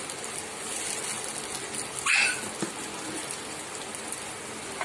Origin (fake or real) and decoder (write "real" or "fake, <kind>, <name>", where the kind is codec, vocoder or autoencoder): real